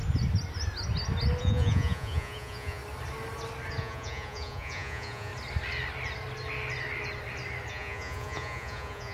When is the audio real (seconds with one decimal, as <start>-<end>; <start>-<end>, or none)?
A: 0.0-1.4; 2.8-3.8; 5.3-7.7